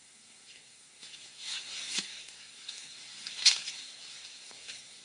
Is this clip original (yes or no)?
no